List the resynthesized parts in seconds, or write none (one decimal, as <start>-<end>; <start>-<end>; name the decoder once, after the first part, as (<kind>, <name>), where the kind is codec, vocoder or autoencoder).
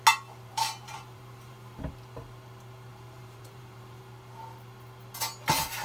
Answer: 0.5-1.8 (vocoder, BigVGAN v2); 2.9-4.0